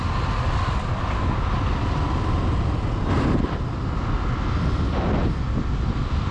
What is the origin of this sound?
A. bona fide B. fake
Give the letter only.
A